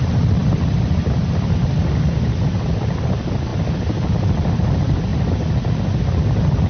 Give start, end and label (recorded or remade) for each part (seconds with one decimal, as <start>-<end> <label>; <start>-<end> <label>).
0.0-6.7 recorded